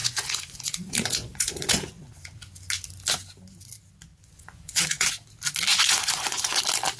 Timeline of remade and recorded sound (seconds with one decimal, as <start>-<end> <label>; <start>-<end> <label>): 0.0-2.0 remade; 2.0-4.1 recorded; 4.1-5.1 remade; 5.1-5.7 recorded; 5.7-6.6 remade; 6.6-7.0 recorded